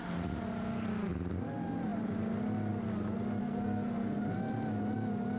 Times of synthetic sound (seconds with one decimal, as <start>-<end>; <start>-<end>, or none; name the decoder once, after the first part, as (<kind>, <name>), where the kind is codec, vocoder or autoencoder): 3.4-4.2 (codec, SNAC)